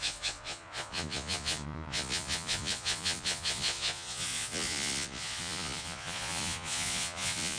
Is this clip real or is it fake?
fake